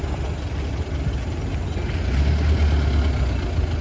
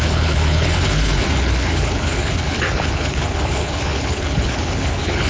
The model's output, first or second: second